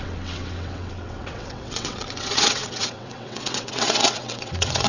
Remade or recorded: remade